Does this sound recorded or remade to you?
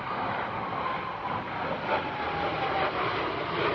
recorded